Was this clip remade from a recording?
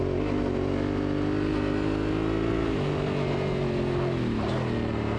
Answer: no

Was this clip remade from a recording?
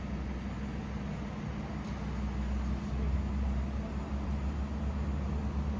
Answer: no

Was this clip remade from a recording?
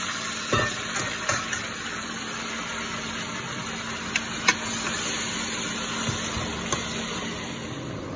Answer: no